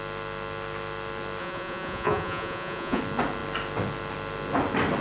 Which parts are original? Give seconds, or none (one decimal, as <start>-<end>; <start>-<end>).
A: 0.0-1.4; 3.0-5.0